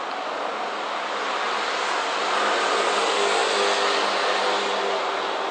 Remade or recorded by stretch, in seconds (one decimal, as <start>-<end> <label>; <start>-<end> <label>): 0.0-5.5 recorded